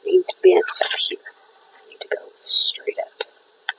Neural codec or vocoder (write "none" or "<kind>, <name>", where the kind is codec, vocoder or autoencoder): vocoder, Vocos